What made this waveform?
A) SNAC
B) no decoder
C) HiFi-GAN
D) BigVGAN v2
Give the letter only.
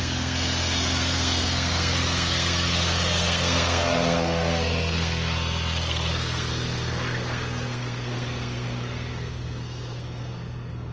A